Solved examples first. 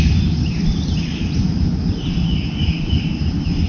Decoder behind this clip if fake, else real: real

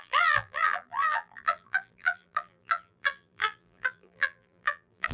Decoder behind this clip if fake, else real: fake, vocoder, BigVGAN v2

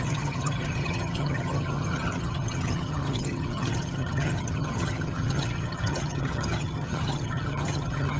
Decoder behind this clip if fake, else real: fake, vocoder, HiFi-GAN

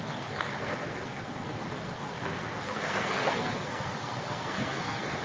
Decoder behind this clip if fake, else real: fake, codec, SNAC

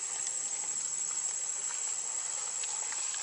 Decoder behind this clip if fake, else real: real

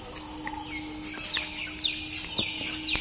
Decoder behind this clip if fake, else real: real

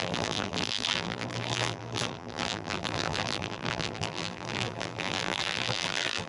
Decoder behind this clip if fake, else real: fake, vocoder, BigVGAN v2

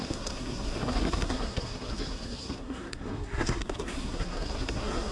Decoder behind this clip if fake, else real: fake, codec, SNAC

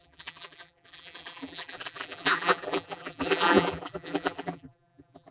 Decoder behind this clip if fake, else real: fake, vocoder, BigVGAN v2